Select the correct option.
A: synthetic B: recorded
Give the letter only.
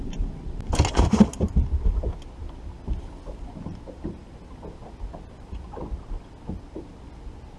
B